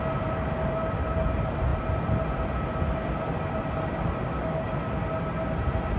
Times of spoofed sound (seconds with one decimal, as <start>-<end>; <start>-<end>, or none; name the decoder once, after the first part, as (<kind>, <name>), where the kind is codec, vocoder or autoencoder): none